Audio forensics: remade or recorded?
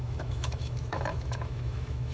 remade